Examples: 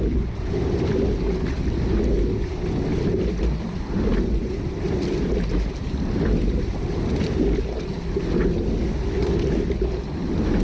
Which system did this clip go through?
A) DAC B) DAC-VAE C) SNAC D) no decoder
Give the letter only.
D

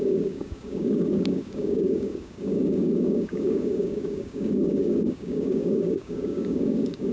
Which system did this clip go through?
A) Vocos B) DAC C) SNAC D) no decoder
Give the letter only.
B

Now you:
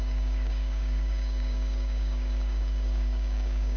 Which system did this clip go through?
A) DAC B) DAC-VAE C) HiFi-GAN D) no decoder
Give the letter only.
A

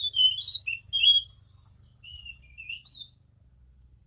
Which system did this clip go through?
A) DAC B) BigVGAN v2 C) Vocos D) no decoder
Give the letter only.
D